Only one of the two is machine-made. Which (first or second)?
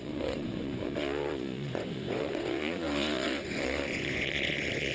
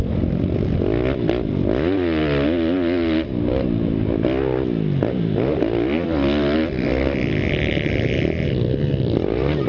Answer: first